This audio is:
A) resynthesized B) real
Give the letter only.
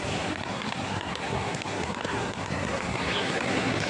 A